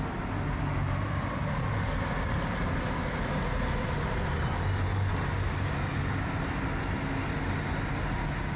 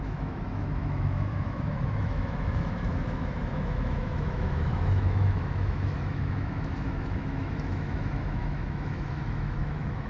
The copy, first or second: second